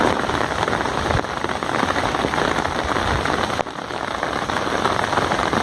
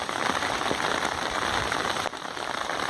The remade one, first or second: second